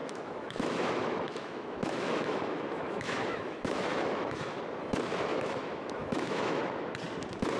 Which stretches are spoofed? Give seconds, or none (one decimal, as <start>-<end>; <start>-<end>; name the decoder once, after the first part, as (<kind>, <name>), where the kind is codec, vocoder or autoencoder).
0.0-4.6 (autoencoder, DAC-VAE); 5.3-6.6